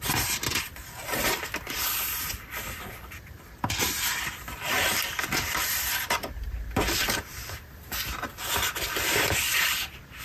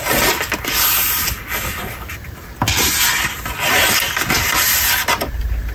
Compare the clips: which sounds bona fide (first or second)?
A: second